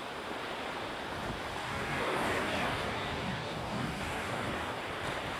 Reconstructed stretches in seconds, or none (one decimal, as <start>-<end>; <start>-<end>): 1.6-4.8